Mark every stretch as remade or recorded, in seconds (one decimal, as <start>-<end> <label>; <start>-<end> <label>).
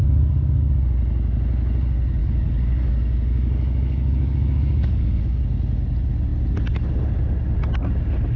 0.0-0.7 remade; 0.7-2.2 recorded; 2.2-5.4 remade; 5.4-8.4 recorded